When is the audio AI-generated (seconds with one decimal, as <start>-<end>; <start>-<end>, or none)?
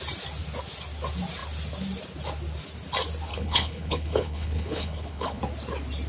3.3-5.4